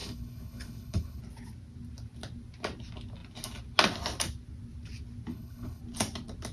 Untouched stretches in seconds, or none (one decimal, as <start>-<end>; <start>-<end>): 1.2-5.3; 5.8-6.5